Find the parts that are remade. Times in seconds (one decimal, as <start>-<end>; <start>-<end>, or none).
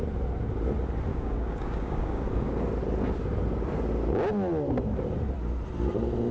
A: 1.1-2.2